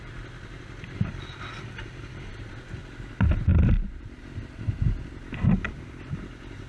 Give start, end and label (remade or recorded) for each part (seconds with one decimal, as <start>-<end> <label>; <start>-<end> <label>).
0.0-3.5 recorded; 3.5-4.2 remade; 4.2-6.7 recorded